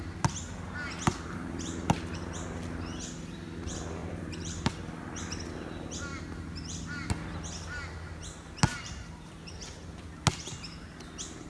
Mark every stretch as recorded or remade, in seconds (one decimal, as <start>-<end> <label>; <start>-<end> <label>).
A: 0.0-4.0 recorded; 4.0-4.7 remade; 4.7-8.7 recorded; 8.7-9.5 remade; 9.5-11.5 recorded